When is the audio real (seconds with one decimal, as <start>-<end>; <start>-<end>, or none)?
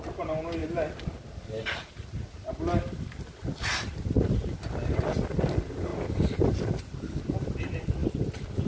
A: 0.0-5.9; 7.0-8.7